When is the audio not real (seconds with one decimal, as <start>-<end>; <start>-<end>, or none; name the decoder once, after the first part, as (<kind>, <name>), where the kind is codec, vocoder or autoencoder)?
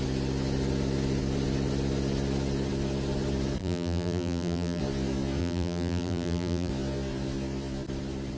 3.6-4.8 (vocoder, BigVGAN v2); 5.4-6.7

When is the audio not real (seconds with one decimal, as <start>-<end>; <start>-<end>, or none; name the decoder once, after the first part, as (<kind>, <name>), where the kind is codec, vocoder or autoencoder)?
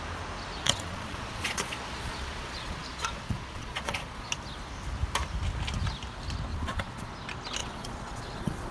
0.6-4.3 (vocoder, Vocos); 6.5-7.1; 7.6-8.7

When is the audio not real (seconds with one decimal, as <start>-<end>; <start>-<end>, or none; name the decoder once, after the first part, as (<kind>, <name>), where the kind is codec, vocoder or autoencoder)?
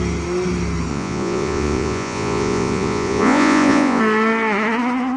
0.9-4.0 (vocoder, Vocos)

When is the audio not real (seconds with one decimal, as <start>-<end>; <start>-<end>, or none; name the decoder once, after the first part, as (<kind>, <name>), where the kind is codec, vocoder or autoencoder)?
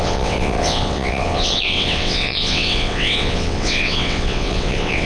0.0-5.0 (vocoder, WaveNeXt)